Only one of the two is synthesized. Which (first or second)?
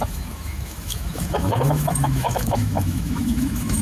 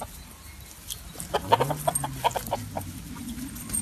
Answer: first